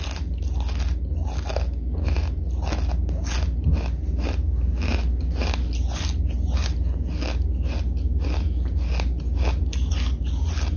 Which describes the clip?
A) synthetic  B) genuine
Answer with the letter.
B